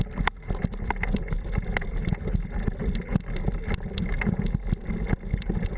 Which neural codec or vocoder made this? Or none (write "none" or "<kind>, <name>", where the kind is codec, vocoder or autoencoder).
none